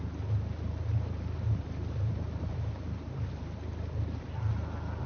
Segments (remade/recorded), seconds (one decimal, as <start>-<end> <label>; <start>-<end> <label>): 0.0-0.9 recorded; 0.9-3.3 remade; 3.3-5.1 recorded